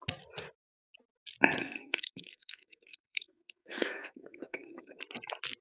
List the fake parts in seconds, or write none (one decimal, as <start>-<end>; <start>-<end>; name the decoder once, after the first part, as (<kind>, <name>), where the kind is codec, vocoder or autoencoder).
1.6-5.0 (codec, SNAC)